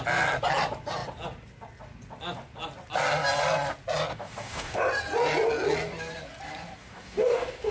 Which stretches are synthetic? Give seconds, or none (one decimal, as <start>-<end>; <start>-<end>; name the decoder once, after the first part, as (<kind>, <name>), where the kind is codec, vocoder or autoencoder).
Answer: 4.1-4.8 (codec, DAC); 6.8-7.7